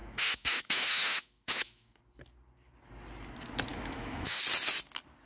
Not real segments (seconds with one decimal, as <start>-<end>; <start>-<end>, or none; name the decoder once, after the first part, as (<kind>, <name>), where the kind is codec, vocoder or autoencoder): 0.0-2.0 (autoencoder, DAC-VAE); 3.7-4.4